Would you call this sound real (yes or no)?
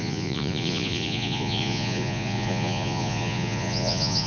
no